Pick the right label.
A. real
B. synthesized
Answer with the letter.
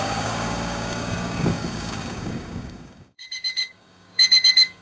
B